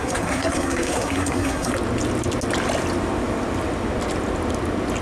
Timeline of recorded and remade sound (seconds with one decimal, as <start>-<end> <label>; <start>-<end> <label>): 0.0-1.7 remade; 1.7-5.0 recorded